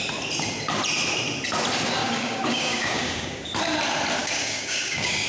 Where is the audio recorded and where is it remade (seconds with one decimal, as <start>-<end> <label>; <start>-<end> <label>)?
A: 0.0-2.0 recorded; 2.0-3.5 remade; 3.5-4.2 recorded; 4.2-5.3 remade